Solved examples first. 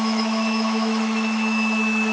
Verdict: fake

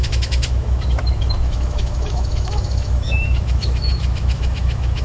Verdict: fake